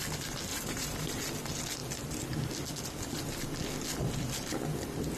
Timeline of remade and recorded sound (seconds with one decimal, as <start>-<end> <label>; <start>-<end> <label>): 0.0-0.5 recorded; 0.5-1.1 remade; 1.1-5.2 recorded